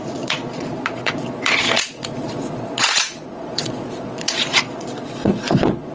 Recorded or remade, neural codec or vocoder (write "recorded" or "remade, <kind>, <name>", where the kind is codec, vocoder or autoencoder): remade, vocoder, Vocos